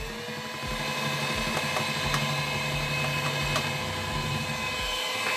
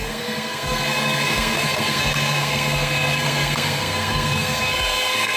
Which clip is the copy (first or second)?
second